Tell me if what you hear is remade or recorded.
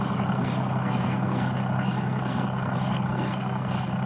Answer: remade